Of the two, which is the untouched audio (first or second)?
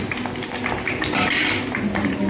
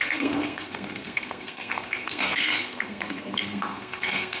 first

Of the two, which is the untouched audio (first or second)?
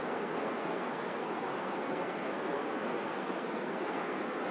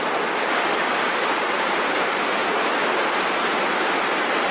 second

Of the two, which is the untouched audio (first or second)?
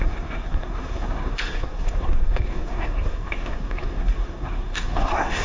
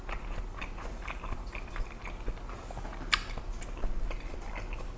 second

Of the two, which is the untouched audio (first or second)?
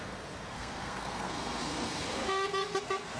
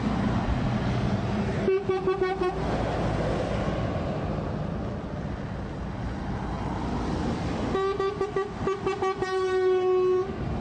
second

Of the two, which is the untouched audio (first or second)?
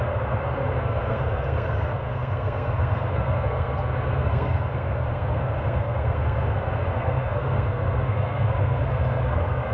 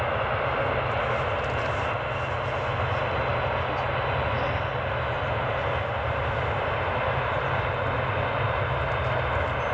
second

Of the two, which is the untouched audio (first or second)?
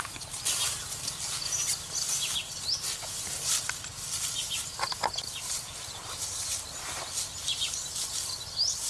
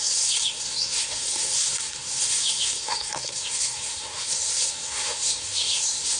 first